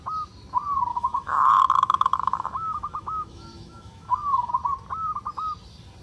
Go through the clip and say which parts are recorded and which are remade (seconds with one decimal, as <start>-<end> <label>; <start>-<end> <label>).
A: 0.0-0.9 recorded; 0.9-4.5 remade; 4.5-6.0 recorded

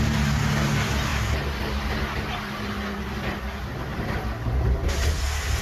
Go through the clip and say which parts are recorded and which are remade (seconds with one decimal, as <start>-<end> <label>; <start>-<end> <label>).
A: 0.0-5.6 recorded

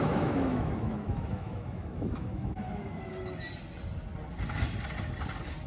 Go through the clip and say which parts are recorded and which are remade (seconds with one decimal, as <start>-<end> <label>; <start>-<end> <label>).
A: 0.0-3.1 remade; 3.1-5.7 recorded

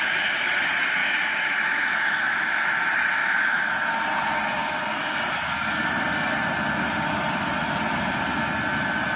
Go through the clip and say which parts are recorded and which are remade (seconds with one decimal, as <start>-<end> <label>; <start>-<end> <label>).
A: 0.0-1.0 recorded; 1.0-2.7 remade; 2.7-3.2 recorded; 3.2-3.7 remade; 3.7-9.2 recorded

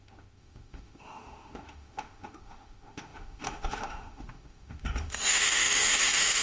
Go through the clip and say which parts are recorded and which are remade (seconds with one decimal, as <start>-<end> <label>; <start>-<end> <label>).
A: 0.0-6.4 remade

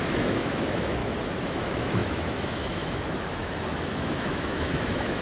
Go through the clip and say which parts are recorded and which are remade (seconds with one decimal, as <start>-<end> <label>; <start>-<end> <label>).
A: 0.0-1.0 remade; 1.0-1.5 recorded; 1.5-5.2 remade

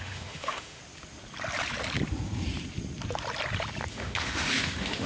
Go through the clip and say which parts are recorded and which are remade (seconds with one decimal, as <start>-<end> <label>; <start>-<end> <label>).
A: 0.0-0.8 remade; 0.8-3.9 recorded; 3.9-5.1 remade

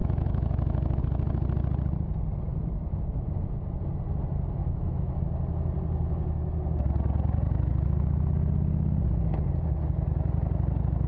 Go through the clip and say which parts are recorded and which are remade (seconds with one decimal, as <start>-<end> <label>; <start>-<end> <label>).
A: 0.0-1.0 remade; 1.0-4.6 recorded; 4.6-5.1 remade; 5.1-11.1 recorded